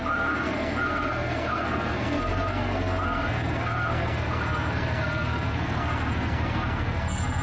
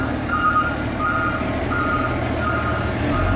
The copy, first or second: first